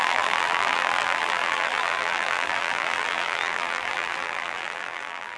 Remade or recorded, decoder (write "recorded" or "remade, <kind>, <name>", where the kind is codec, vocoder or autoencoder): remade, vocoder, BigVGAN v2